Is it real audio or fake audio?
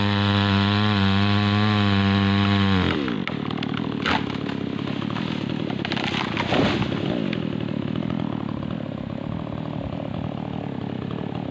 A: real